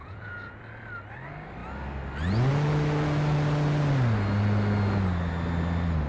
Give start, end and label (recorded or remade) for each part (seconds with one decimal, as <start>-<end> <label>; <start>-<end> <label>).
0.0-0.6 remade; 0.6-6.1 recorded